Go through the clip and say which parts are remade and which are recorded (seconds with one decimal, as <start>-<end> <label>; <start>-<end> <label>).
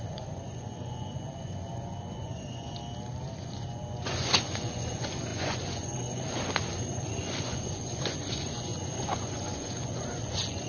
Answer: 0.0-2.8 remade; 2.8-3.4 recorded; 3.4-10.7 remade